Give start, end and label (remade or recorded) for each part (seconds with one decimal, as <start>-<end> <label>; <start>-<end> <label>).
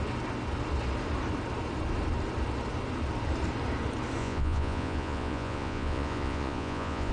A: 0.0-4.2 recorded; 4.2-7.1 remade